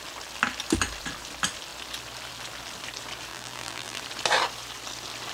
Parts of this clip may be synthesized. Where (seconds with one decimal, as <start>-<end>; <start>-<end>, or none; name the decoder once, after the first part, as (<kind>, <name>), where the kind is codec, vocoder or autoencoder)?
3.3-4.0 (vocoder, BigVGAN v2)